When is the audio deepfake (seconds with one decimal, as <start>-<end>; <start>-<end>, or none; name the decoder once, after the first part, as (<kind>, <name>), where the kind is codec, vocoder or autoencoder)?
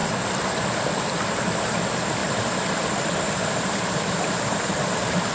none